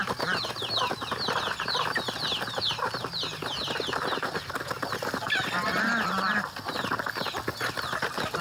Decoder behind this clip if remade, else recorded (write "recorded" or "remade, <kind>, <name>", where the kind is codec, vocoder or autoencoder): recorded